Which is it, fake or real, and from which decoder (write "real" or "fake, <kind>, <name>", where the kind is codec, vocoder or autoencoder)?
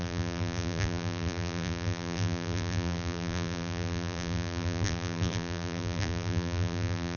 fake, vocoder, BigVGAN v2